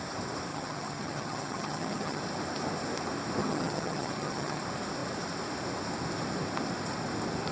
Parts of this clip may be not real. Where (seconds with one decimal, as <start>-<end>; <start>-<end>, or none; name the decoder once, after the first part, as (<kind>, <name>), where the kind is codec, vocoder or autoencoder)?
0.5-2.2 (vocoder, HiFi-GAN); 3.4-4.6